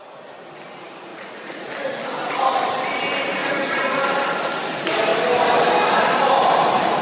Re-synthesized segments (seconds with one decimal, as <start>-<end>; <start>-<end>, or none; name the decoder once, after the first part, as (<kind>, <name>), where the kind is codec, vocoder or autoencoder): 1.1-1.7 (vocoder, Vocos); 3.4-4.0